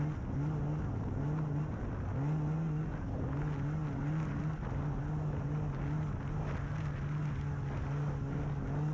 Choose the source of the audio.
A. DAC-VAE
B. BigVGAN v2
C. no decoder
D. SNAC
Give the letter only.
C